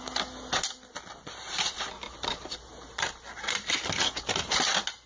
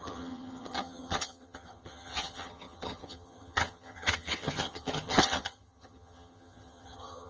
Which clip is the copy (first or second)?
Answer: second